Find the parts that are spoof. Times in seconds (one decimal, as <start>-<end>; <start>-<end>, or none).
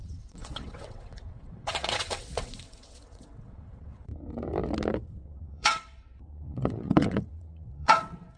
0.0-4.1; 5.1-8.4